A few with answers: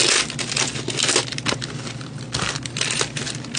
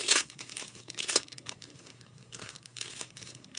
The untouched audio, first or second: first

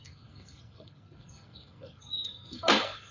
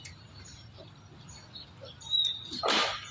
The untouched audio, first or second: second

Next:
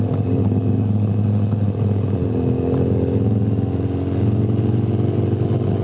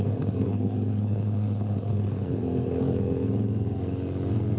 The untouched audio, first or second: first